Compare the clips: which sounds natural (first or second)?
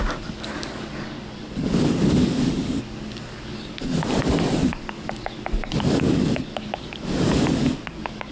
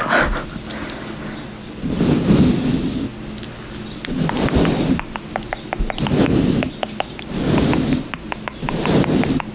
second